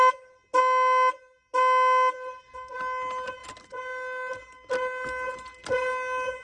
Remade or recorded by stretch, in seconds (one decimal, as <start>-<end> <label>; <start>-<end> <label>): 0.0-6.4 recorded